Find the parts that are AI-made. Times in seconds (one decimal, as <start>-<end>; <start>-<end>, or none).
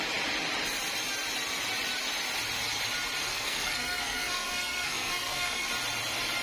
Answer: 3.3-5.7